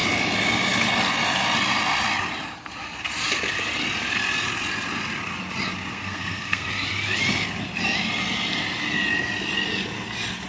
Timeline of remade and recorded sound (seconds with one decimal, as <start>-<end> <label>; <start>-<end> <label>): 0.0-5.9 recorded; 5.9-6.7 remade; 6.7-10.5 recorded